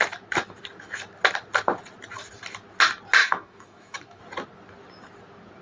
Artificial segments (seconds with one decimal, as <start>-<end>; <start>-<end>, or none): 3.2-4.2